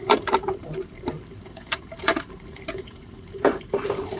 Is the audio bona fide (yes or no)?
no